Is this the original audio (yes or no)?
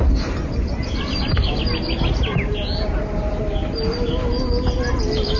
yes